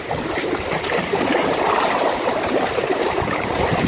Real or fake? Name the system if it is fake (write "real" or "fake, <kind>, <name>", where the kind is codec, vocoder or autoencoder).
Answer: fake, vocoder, BigVGAN v2